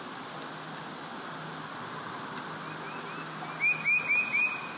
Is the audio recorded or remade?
recorded